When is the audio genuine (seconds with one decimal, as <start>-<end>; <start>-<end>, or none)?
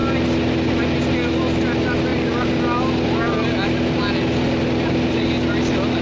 0.0-6.0